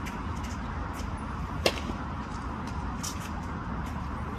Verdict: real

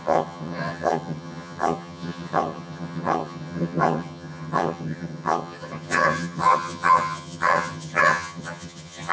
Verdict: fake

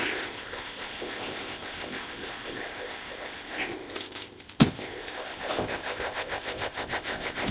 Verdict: fake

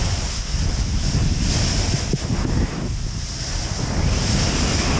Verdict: real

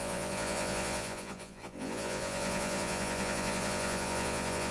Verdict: fake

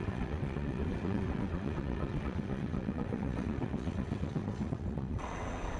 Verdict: fake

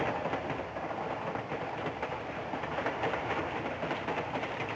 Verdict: real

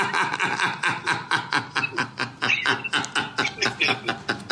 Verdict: real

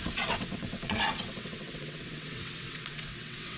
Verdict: fake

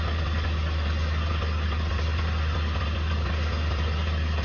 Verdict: real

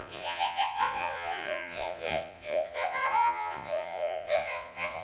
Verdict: fake